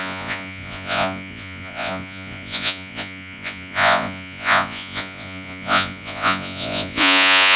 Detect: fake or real fake